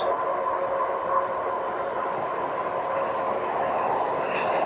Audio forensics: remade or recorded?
recorded